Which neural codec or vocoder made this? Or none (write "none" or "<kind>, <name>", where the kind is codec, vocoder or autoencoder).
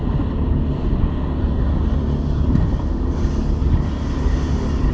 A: none